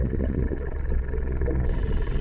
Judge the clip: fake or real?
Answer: fake